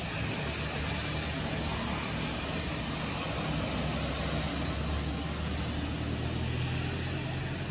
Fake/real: real